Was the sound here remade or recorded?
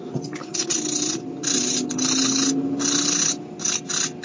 recorded